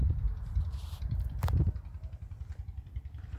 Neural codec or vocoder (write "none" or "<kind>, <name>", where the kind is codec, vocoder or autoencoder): vocoder, BigVGAN v2